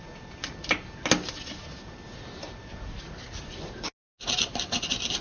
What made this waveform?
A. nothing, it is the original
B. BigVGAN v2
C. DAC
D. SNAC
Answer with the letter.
A